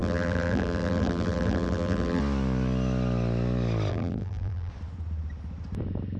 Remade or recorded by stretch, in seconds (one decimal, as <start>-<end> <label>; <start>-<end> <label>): 0.0-2.2 remade; 2.2-3.9 recorded; 3.9-4.7 remade; 4.7-6.2 recorded